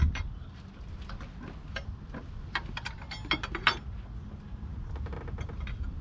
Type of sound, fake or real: real